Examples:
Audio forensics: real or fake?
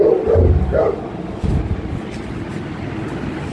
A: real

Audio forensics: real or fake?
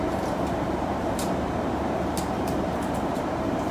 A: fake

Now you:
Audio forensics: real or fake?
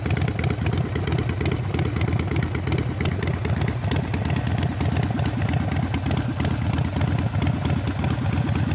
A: real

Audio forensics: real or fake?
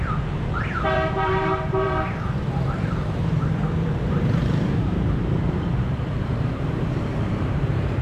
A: fake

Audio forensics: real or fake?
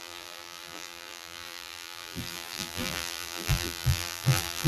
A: fake